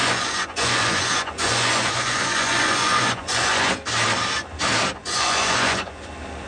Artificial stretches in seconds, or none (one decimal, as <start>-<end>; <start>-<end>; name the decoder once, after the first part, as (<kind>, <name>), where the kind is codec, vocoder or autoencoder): 0.0-3.7 (vocoder, Vocos); 5.0-6.1